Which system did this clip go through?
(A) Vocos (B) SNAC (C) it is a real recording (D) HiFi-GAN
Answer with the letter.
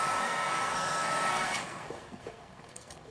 B